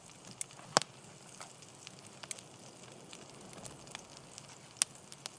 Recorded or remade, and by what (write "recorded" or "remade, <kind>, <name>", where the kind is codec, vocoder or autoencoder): recorded